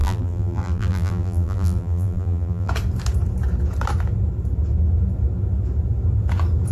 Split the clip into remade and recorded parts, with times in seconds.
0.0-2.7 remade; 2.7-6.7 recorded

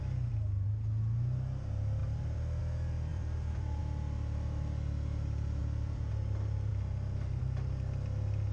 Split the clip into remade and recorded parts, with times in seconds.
0.0-2.0 recorded; 2.0-2.6 remade; 2.6-3.1 recorded; 3.1-3.8 remade; 3.8-5.6 recorded; 5.6-6.1 remade; 6.1-8.5 recorded